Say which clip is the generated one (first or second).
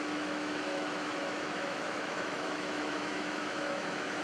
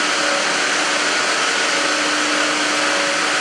first